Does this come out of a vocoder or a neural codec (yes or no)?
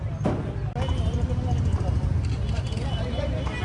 no